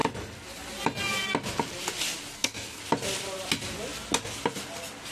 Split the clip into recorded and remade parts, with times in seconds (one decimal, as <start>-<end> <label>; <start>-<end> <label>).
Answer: 0.0-2.3 recorded; 2.3-2.8 remade; 2.8-5.1 recorded

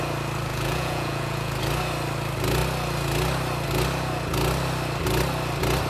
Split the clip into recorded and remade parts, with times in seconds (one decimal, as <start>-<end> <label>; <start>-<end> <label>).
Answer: 0.0-0.5 recorded; 0.5-1.5 remade; 1.5-5.9 recorded

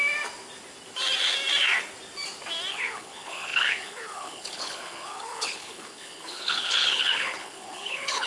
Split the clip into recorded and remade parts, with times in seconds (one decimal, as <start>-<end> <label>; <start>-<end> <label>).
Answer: 0.0-2.7 recorded; 2.7-8.3 remade

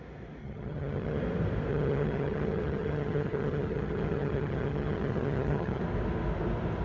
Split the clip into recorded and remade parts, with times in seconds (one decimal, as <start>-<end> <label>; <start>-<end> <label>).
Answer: 0.0-0.4 recorded; 0.4-1.2 remade; 1.2-1.7 recorded; 1.7-5.8 remade; 5.8-6.8 recorded